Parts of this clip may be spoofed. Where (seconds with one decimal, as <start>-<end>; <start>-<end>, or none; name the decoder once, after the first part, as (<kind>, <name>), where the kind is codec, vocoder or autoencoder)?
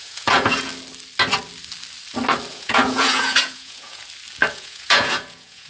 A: 0.0-0.7 (vocoder, Vocos); 2.5-4.0; 4.5-5.7